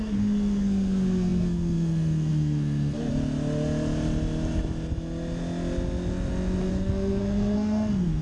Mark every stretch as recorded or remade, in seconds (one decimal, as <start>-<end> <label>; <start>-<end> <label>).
0.0-3.1 remade; 3.1-6.7 recorded; 6.7-8.2 remade